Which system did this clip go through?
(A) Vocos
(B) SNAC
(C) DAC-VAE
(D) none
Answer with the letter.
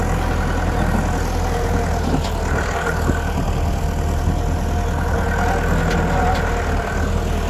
D